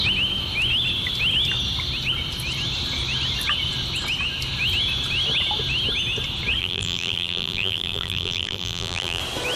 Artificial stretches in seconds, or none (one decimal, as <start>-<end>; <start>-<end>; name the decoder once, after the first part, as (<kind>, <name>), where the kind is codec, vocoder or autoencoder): 6.6-9.2 (vocoder, BigVGAN v2)